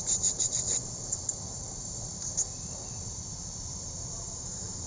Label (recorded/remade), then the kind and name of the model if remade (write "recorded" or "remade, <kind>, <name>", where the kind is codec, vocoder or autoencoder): remade, vocoder, BigVGAN v2